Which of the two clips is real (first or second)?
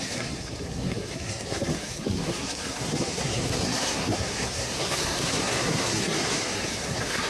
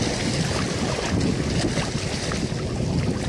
second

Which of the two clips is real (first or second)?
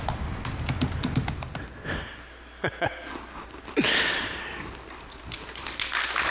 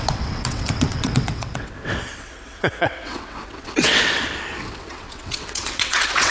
first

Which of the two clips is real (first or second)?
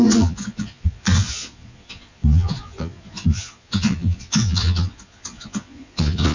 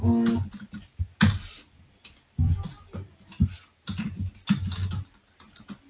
second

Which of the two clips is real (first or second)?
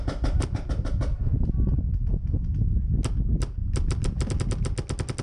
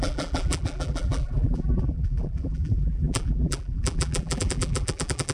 first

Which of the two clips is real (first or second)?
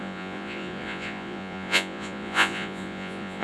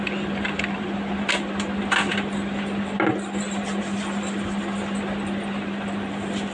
second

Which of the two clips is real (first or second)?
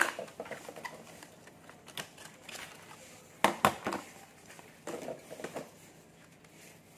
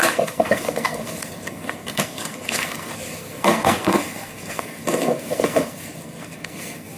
first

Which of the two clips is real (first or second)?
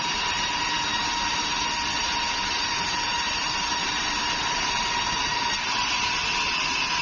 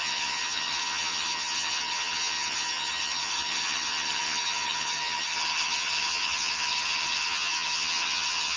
first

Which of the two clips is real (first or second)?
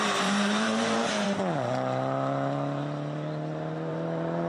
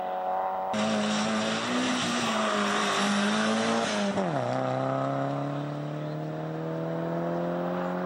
second